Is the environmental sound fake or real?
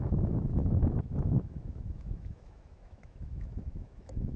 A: fake